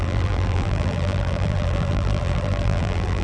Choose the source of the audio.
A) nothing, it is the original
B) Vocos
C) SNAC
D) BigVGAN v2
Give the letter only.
D